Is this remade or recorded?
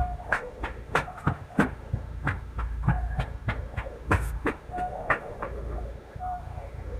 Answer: remade